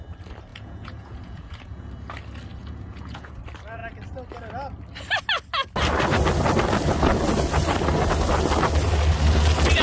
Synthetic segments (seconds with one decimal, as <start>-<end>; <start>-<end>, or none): 0.5-1.9; 2.6-3.4